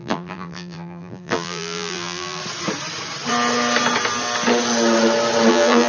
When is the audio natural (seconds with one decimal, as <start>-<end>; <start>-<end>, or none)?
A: 2.4-5.5